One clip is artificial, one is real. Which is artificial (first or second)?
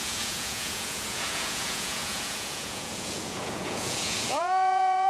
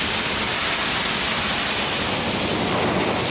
first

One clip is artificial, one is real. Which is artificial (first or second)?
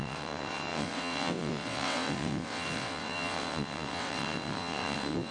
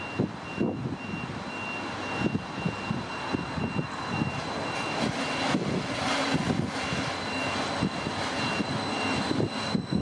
first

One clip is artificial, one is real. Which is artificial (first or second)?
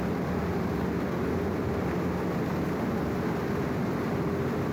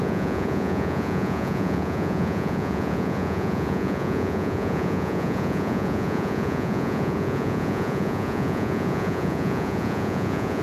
second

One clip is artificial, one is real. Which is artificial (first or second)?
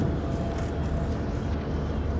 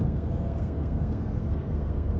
second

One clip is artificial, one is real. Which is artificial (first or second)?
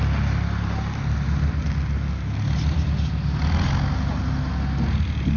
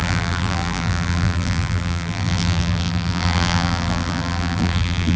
second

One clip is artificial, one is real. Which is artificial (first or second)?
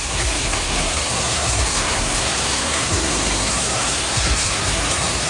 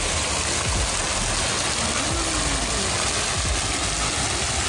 first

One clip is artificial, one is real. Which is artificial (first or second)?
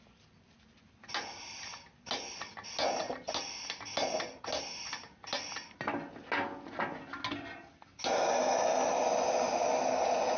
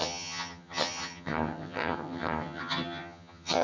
second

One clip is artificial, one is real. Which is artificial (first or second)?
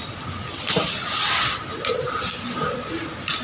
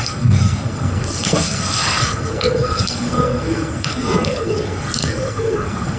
second